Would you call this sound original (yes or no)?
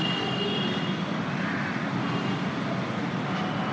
yes